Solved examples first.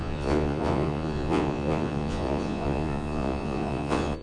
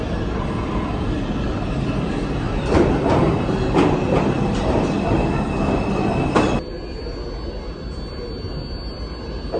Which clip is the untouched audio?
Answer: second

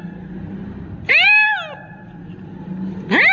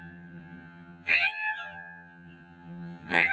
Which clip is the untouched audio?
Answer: first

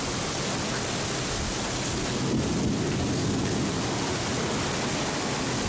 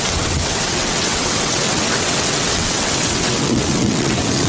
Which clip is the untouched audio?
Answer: first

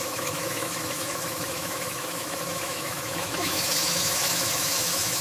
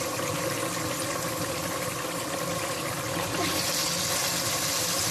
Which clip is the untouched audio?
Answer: second